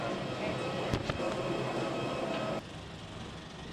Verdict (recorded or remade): recorded